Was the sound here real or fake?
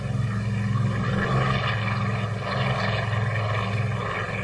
real